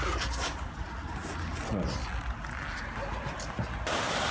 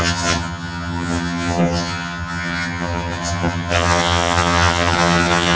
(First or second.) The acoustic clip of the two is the first